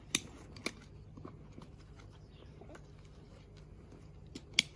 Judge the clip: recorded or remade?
recorded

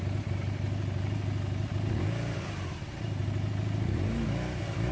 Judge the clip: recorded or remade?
recorded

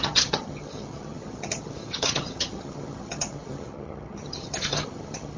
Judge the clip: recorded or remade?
remade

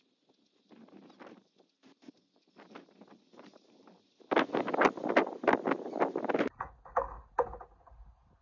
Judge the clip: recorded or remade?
recorded